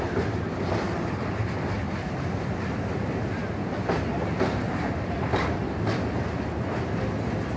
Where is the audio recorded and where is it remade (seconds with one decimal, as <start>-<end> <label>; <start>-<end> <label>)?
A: 0.0-3.4 remade; 3.4-4.1 recorded; 4.1-5.6 remade; 5.6-7.6 recorded